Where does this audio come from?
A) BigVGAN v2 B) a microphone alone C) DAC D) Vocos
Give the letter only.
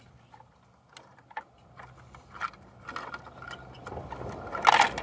B